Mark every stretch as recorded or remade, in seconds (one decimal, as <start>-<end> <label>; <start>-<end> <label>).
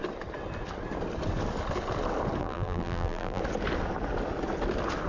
0.0-2.4 recorded; 2.4-3.4 remade; 3.4-5.1 recorded